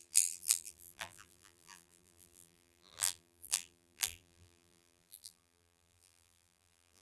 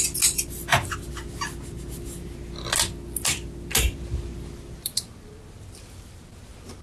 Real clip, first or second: second